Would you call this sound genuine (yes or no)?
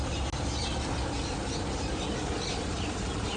yes